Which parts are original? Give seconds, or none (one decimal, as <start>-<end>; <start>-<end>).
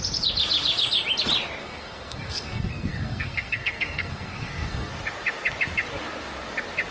0.0-1.6; 4.9-6.9